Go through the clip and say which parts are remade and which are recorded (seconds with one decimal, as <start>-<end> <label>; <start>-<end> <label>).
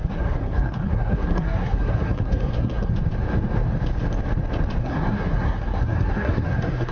0.0-2.9 remade; 2.9-4.8 recorded; 4.8-6.9 remade